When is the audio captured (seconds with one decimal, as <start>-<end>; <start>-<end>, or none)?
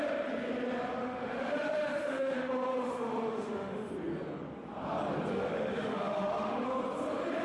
0.0-1.0; 3.9-5.3; 6.8-7.4